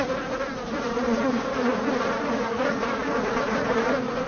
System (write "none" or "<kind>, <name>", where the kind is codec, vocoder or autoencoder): vocoder, Vocos